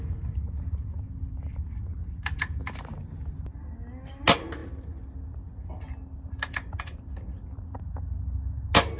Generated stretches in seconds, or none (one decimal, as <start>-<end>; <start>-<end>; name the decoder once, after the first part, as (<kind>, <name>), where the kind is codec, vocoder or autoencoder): none